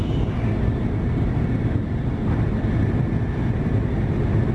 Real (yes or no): yes